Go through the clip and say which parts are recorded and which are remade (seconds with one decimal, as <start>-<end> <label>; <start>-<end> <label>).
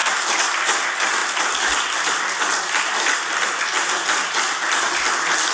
0.0-5.5 recorded